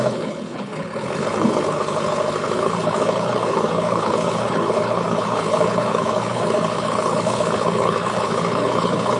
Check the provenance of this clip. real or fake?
fake